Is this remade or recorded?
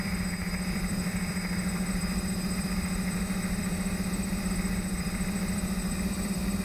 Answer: remade